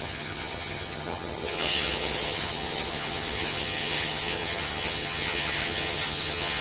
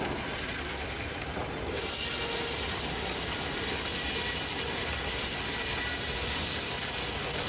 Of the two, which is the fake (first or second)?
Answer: first